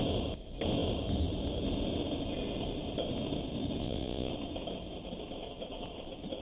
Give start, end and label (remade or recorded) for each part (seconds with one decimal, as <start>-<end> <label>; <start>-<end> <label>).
0.0-3.8 recorded; 3.8-4.3 remade; 4.3-6.4 recorded